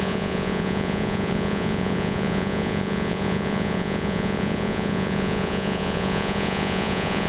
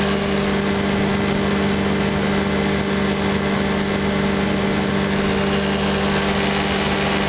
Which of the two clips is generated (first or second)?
first